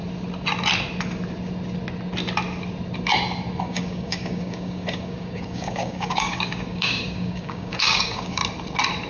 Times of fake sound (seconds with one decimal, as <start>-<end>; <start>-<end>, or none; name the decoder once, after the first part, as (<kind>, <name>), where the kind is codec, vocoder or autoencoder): 3.6-8.4 (codec, DAC)